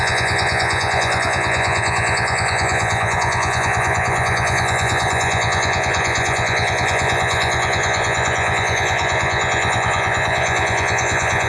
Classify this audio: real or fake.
fake